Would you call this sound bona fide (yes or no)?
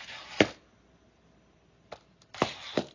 yes